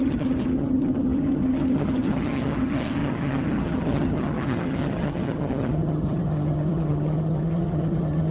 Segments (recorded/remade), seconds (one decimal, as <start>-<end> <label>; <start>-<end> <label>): 0.0-8.3 remade